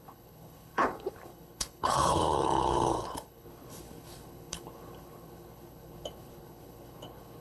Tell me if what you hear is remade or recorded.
remade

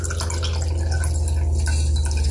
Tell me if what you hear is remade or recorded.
recorded